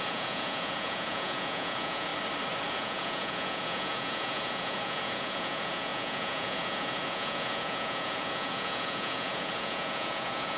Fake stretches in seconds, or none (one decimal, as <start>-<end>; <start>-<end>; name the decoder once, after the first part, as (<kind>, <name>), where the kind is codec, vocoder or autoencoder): 0.0-2.1 (vocoder, Vocos); 2.7-10.6